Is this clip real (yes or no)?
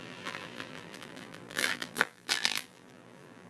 no